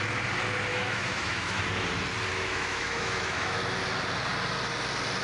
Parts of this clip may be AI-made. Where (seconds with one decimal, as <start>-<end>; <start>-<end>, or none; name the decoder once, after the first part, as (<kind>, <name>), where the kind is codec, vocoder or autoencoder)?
0.7-1.6 (autoencoder, DAC-VAE); 2.3-3.6